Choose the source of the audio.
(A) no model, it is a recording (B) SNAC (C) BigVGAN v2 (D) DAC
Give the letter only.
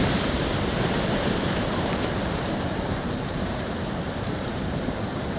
C